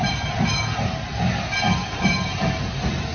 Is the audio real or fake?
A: real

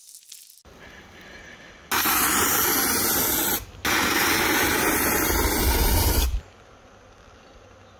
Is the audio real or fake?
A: real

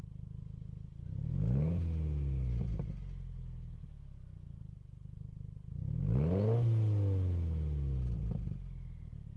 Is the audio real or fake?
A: real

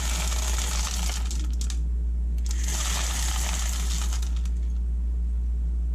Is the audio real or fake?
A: real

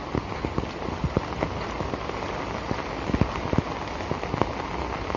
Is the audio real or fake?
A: real